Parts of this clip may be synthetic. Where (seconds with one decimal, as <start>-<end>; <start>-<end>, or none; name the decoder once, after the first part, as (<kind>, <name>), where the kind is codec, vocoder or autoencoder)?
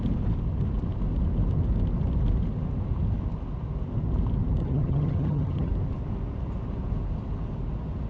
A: 4.6-5.7 (vocoder, HiFi-GAN)